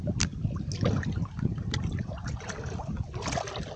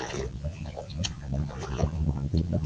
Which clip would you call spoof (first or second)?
second